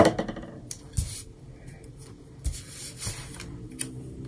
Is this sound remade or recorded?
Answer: recorded